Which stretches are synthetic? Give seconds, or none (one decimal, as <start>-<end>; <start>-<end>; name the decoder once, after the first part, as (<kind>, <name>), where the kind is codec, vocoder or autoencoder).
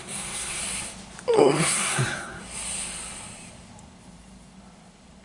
0.0-0.6 (codec, SNAC); 1.4-2.4